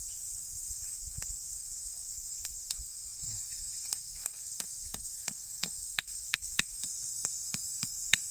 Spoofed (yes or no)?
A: yes